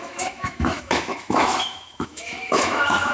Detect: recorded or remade remade